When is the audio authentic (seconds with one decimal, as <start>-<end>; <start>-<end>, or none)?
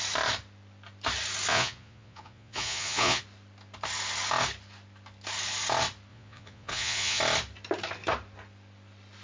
0.0-1.5; 3.2-6.1; 7.2-9.2